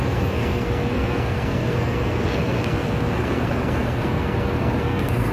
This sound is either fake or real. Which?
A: fake